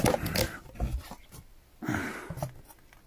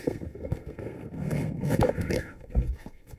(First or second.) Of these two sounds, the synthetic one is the second